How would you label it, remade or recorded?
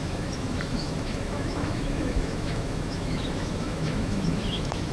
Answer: remade